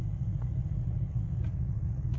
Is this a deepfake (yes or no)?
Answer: yes